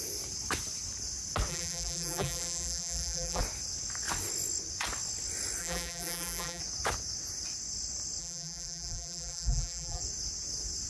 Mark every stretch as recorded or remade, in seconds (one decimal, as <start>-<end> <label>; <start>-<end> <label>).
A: 0.0-1.5 recorded; 1.5-3.4 remade; 3.4-5.6 recorded; 5.6-6.6 remade; 6.6-8.2 recorded; 8.2-10.0 remade; 10.0-10.9 recorded